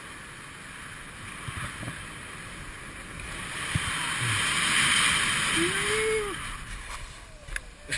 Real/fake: real